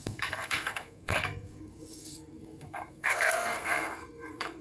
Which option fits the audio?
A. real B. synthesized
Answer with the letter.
B